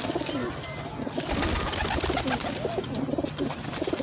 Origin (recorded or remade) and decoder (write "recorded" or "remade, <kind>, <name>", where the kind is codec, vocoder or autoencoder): recorded